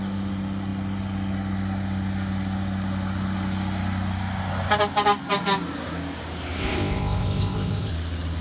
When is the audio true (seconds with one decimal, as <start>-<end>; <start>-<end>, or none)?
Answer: 0.0-6.6; 7.9-8.4